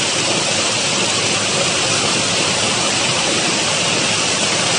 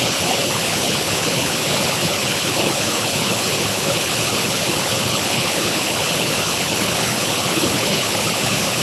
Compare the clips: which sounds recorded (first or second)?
first